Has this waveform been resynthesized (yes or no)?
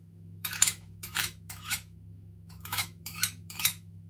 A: yes